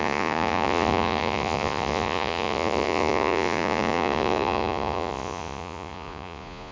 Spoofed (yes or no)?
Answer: yes